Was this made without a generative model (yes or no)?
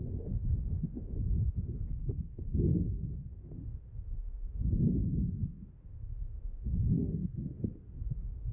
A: no